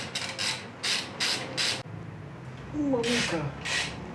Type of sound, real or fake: real